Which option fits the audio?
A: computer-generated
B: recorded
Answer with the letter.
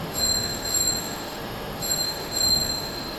A